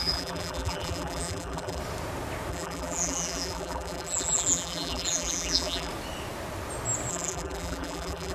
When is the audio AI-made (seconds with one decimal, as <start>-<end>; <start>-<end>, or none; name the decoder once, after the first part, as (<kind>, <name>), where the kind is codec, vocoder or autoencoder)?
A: 0.0-1.8 (vocoder, BigVGAN v2); 2.5-5.9; 7.1-8.3